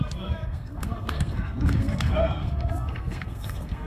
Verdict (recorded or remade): remade